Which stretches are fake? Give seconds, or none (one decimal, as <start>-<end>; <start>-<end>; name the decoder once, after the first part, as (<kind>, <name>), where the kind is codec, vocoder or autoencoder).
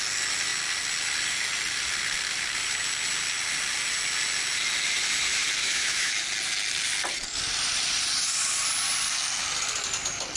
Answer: 5.6-6.1 (autoencoder, DAC-VAE)